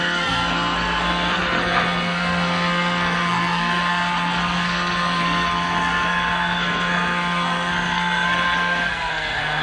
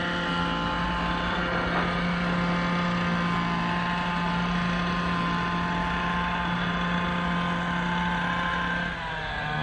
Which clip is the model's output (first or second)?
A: first